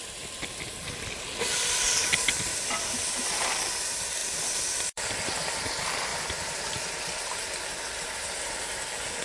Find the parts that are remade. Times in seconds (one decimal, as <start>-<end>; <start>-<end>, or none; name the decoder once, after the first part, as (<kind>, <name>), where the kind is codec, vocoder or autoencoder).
2.5-3.4 (vocoder, BigVGAN v2); 4.2-5.1; 6.1-6.8